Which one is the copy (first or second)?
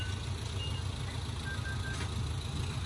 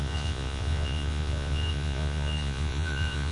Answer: second